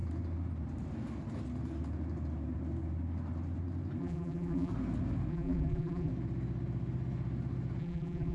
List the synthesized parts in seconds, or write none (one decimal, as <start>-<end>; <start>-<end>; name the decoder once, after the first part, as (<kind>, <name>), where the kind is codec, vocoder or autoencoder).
4.0-4.7 (vocoder, BigVGAN v2); 5.3-6.1; 7.8-8.3